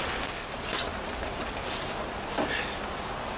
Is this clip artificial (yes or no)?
no